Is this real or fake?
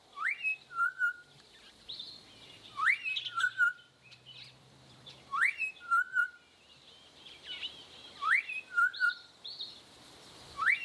fake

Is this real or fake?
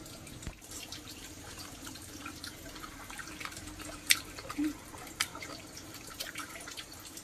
fake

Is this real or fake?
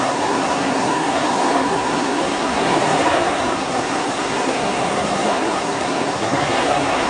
fake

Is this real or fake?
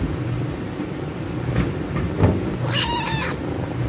real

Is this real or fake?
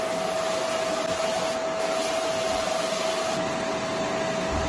real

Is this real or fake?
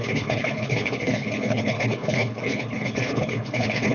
fake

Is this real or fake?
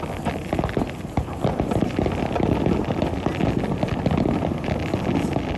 real